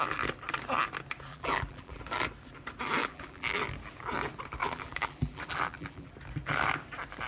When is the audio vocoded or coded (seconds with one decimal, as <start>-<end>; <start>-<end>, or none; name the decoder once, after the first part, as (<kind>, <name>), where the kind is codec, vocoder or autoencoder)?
1.3-2.0 (vocoder, BigVGAN v2); 3.0-3.6; 4.6-6.1